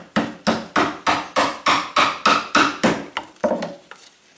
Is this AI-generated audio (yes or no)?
no